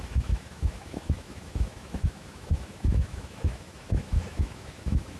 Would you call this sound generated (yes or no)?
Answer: yes